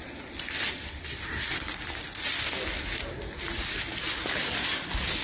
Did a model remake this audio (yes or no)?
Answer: no